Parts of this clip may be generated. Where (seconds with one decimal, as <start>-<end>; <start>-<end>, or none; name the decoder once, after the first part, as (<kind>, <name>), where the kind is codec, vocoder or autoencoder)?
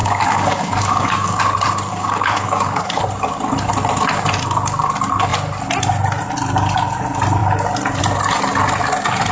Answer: 0.0-1.4 (codec, DAC); 1.9-3.0